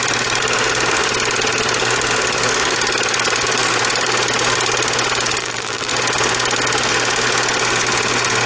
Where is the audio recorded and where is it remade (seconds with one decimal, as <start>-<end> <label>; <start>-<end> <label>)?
0.0-5.4 recorded; 5.4-5.9 remade; 5.9-8.5 recorded